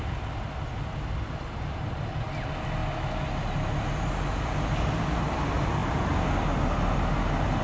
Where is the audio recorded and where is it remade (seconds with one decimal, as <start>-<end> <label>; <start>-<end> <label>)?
0.0-7.6 recorded